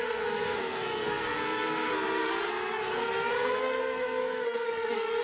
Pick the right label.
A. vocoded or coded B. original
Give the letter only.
A